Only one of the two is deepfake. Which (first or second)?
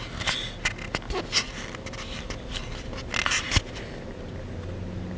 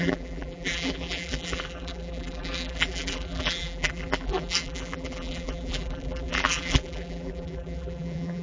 second